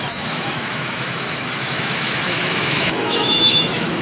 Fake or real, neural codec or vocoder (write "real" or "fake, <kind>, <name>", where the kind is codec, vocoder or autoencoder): fake, autoencoder, DAC-VAE